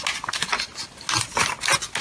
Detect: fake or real real